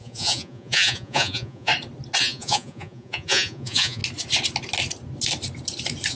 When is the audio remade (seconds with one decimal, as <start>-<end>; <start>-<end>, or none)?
0.0-1.7; 2.2-4.0